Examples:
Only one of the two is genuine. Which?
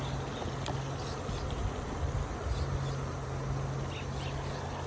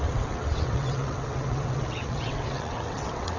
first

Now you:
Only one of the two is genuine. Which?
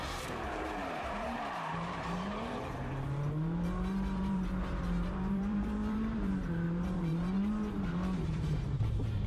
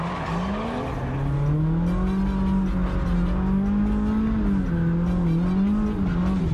second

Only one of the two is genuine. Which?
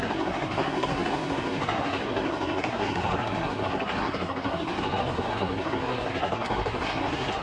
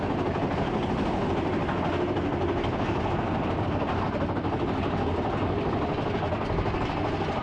second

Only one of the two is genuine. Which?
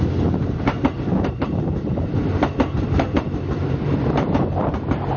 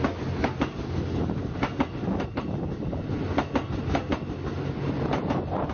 second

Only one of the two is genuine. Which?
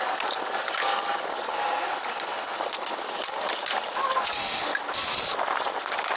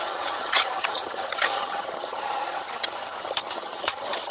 first